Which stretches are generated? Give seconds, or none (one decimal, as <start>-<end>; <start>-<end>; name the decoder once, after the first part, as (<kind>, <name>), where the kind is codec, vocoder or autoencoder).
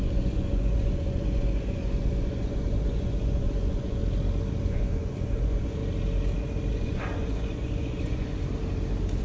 0.0-4.0 (vocoder, Vocos); 4.7-5.8; 6.7-8.3